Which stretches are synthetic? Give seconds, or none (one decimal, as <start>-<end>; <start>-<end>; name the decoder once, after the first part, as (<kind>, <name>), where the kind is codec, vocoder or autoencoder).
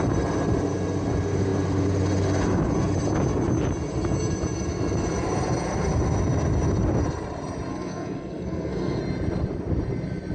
7.7-9.0 (codec, SNAC)